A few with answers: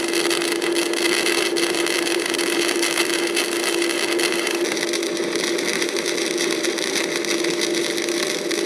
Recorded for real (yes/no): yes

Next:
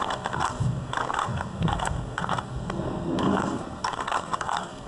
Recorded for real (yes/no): no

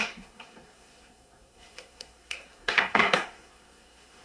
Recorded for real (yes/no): no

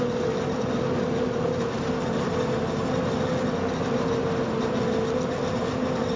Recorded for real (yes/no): yes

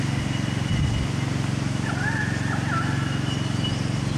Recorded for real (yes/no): yes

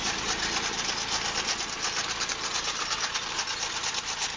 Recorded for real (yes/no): yes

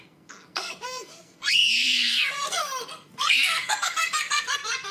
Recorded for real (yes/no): no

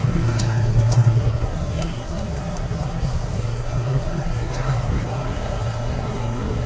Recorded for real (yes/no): no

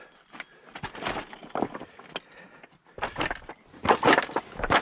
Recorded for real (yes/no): yes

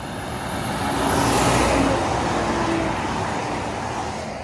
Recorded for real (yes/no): yes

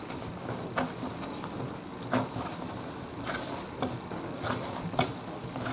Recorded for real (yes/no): yes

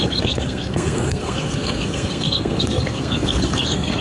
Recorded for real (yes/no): no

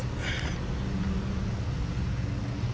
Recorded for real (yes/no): yes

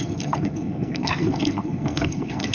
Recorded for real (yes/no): no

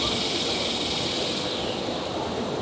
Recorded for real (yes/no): yes